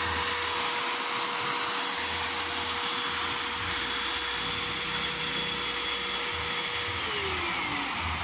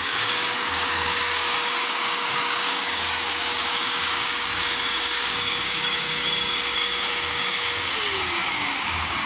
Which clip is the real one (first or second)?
first